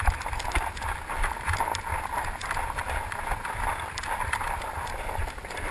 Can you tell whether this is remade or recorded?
recorded